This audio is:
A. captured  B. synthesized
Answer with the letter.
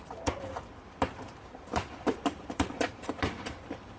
B